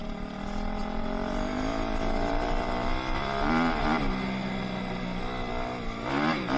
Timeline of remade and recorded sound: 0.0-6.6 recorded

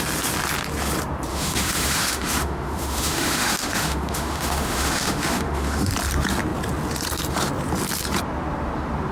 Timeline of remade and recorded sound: 0.0-1.3 recorded; 1.3-5.9 remade; 5.9-9.1 recorded

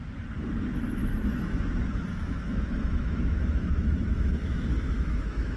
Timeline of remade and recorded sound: 0.0-1.0 recorded; 1.0-1.6 remade; 1.6-2.1 recorded; 2.1-5.6 remade

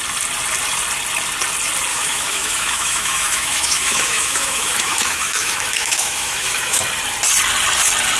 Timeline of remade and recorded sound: 0.0-1.9 recorded; 1.9-6.8 remade; 6.8-8.2 recorded

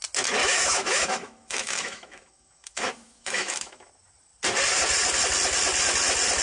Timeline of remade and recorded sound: 0.0-0.4 recorded; 0.4-3.9 remade; 3.9-6.4 recorded